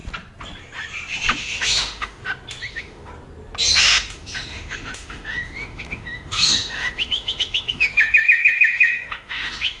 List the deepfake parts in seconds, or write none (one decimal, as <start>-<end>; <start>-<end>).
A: 1.4-2.2; 2.7-3.1; 3.8-9.8